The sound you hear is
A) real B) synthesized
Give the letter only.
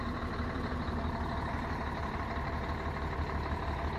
B